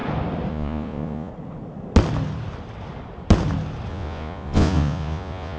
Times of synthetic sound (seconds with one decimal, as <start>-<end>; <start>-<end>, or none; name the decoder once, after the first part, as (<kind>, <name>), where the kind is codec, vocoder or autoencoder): 0.5-1.3 (vocoder, Vocos); 3.9-5.6